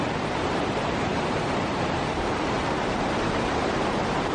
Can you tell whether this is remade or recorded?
remade